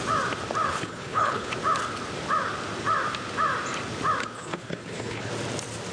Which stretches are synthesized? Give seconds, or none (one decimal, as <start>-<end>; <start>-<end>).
0.7-1.5; 4.2-5.3